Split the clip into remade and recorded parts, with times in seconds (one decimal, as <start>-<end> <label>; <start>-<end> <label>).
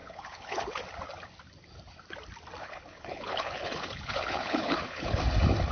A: 0.0-0.8 remade; 0.8-2.6 recorded; 2.6-5.2 remade; 5.2-5.7 recorded